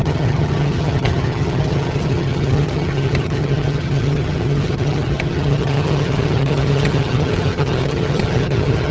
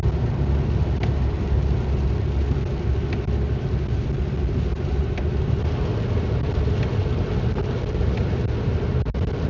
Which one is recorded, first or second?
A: second